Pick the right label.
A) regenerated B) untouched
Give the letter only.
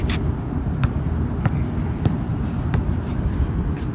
B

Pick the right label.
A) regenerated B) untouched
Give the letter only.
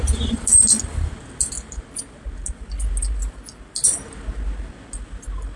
B